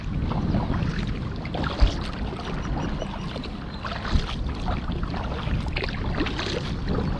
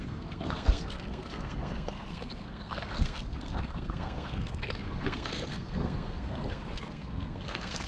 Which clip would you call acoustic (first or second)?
first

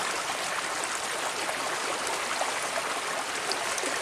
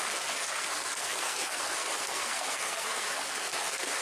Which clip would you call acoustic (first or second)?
first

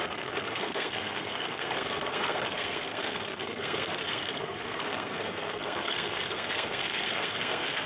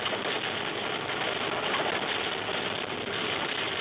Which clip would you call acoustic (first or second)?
second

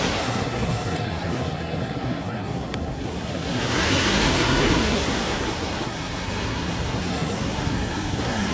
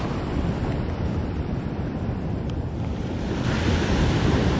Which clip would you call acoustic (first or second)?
second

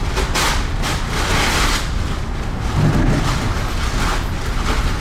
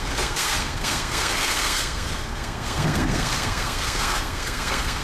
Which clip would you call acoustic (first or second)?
first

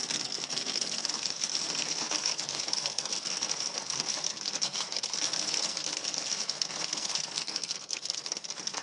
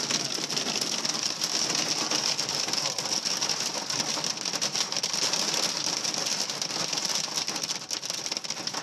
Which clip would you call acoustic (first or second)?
second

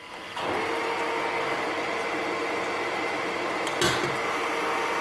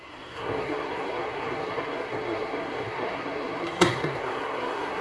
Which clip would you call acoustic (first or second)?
first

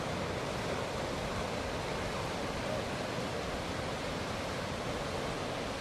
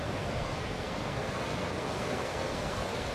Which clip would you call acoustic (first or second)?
first